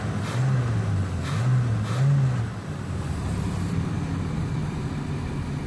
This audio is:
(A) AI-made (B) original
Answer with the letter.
B